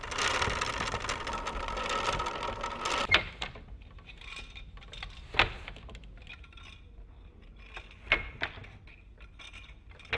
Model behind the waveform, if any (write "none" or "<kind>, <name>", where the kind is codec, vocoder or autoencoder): none